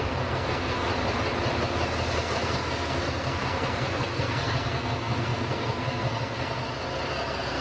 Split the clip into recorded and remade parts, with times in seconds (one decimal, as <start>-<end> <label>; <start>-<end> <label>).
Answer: 0.0-0.9 remade; 0.9-2.2 recorded; 2.2-6.6 remade; 6.6-7.1 recorded; 7.1-7.6 remade

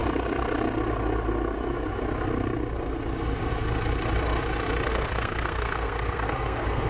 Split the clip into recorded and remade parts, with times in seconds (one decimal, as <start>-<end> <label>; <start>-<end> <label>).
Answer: 0.0-4.9 recorded; 4.9-6.9 remade

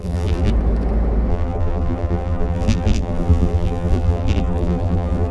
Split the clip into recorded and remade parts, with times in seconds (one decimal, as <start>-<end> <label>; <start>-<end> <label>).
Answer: 0.0-0.5 remade; 0.5-1.3 recorded; 1.3-5.3 remade

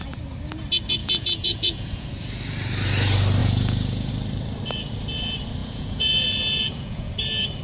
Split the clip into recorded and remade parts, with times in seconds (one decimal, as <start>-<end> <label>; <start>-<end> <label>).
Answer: 0.0-1.0 recorded; 1.0-2.1 remade; 2.1-3.4 recorded; 3.4-4.1 remade; 4.1-5.6 recorded; 5.6-7.1 remade; 7.1-7.6 recorded

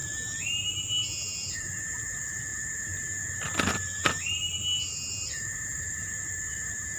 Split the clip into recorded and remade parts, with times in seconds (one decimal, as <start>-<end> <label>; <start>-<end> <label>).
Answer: 0.0-7.0 recorded

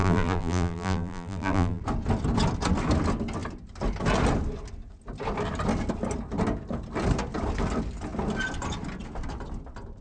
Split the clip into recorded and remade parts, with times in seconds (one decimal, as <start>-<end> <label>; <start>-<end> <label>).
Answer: 0.0-1.8 remade; 1.8-10.0 recorded

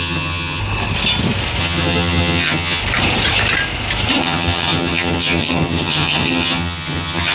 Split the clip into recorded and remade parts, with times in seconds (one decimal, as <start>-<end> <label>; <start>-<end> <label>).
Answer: 0.0-0.6 remade; 0.6-1.6 recorded; 1.6-2.8 remade; 2.8-4.2 recorded; 4.2-7.3 remade

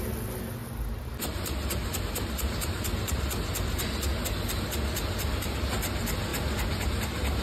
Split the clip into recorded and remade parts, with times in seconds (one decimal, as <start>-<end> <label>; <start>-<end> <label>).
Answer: 0.0-7.4 recorded